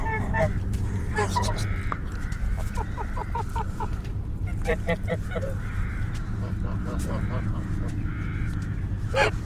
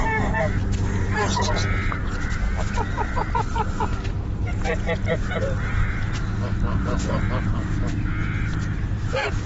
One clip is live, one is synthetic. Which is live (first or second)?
second